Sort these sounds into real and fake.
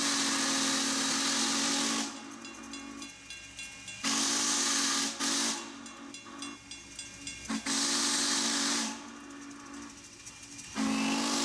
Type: real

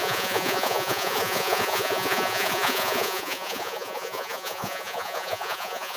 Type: fake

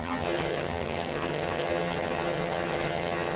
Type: fake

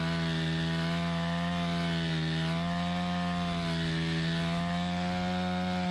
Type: real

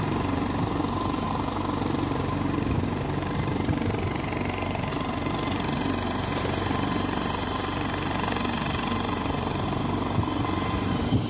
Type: fake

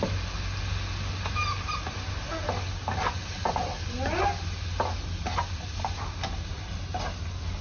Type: real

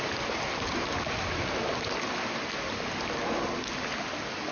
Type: real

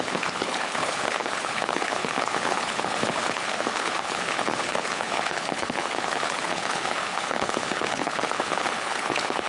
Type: fake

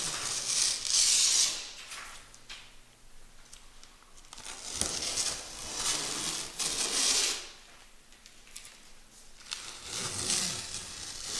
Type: real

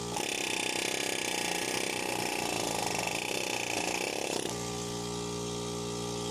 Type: real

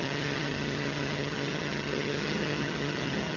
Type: fake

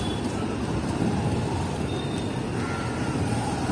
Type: real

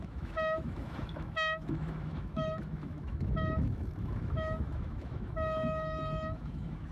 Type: fake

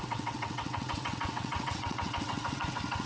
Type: fake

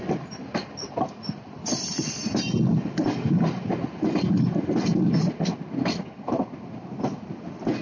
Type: real